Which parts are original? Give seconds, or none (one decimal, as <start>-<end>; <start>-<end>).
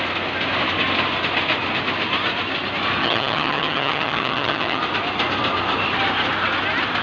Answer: 0.0-3.0; 4.8-7.0